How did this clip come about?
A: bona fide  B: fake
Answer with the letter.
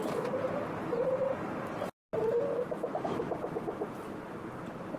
A